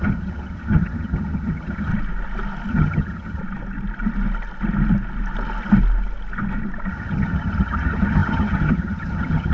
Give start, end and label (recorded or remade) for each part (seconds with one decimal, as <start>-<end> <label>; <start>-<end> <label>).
0.0-1.9 remade; 1.9-2.7 recorded; 2.7-3.4 remade; 3.4-6.9 recorded; 6.9-9.5 remade